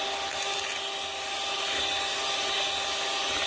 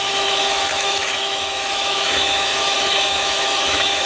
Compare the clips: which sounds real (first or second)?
first